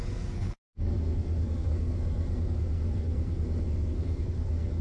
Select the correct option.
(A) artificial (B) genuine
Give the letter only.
A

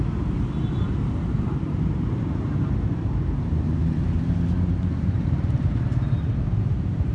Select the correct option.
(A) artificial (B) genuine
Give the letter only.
A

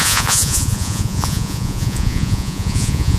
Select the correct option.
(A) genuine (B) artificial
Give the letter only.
B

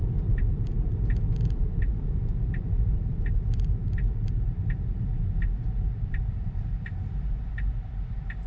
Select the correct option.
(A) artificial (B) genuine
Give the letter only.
A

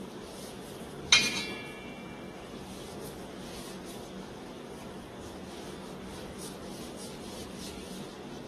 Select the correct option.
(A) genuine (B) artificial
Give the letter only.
A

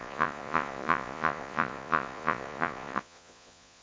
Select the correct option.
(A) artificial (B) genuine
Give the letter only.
A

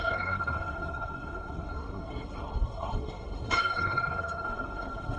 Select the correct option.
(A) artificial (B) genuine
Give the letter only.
A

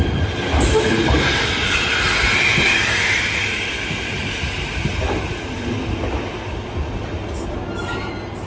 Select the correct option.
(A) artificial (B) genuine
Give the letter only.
B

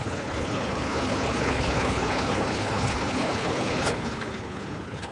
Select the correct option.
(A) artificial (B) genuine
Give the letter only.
A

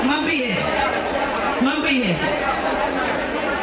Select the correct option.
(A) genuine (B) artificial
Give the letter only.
B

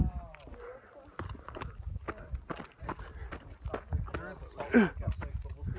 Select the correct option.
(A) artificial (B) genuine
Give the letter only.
B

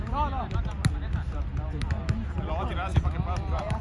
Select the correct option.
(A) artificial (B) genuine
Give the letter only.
B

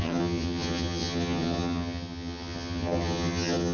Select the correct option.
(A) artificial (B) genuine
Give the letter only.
A